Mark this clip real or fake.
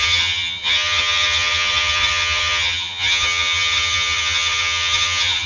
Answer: fake